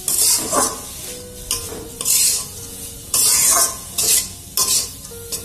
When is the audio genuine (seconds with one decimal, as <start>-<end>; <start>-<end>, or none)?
0.0-2.7; 4.1-5.4